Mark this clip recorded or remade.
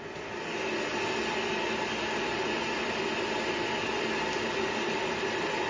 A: recorded